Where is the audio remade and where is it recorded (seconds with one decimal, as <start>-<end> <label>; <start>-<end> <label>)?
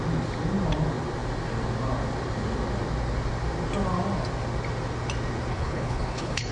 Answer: 0.0-5.5 recorded; 5.5-6.5 remade